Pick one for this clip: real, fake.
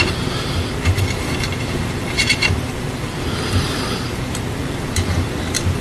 fake